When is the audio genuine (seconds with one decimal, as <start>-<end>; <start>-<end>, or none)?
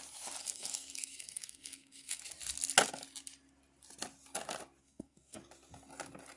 0.0-0.4; 2.2-4.8; 5.4-6.4